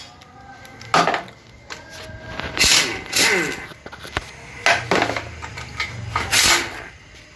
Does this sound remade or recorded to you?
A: recorded